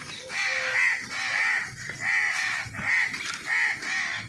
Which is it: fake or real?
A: real